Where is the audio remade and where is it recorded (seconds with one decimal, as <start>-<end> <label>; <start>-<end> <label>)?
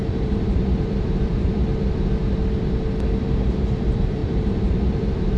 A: 0.0-1.7 remade; 1.7-3.1 recorded; 3.1-5.4 remade